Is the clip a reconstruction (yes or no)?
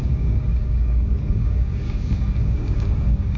yes